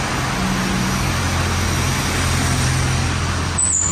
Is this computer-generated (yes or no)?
no